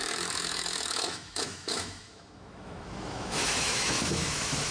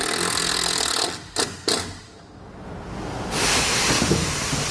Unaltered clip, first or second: second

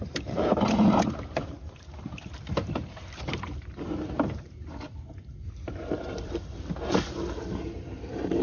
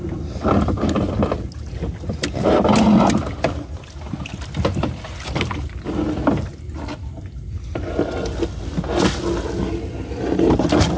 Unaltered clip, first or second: second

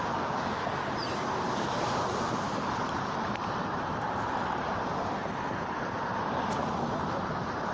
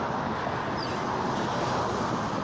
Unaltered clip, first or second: second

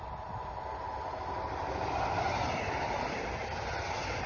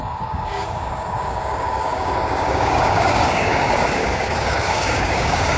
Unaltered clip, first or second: first